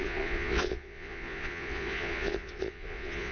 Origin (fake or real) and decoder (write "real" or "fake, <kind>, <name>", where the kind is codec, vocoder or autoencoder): fake, vocoder, Vocos